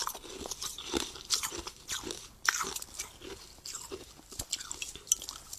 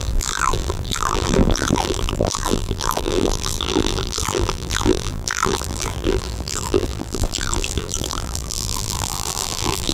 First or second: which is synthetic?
second